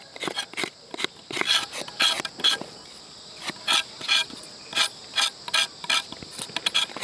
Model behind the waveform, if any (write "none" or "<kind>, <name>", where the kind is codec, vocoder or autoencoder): none